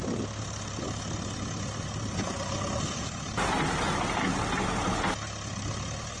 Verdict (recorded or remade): recorded